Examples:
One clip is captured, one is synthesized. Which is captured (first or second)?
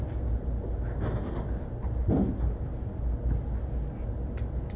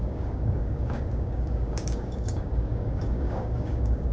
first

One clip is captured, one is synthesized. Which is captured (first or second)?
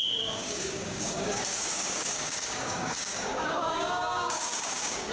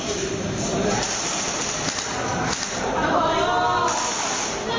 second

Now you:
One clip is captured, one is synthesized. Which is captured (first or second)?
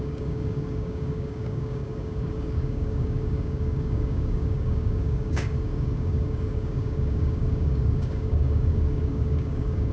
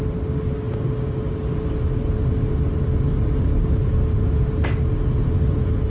second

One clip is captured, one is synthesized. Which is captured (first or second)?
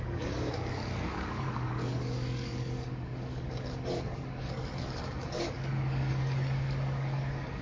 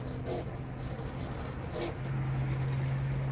second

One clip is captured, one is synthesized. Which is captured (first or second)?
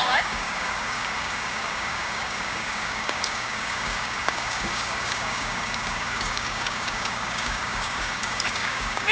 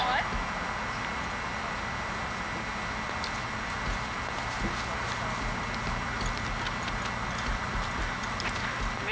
second